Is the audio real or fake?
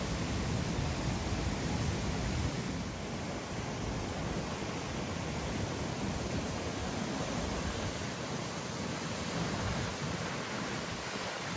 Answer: real